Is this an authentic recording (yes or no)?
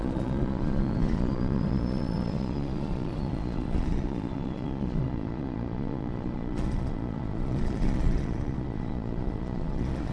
no